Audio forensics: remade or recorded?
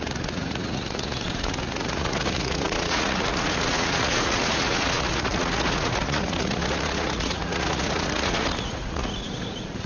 remade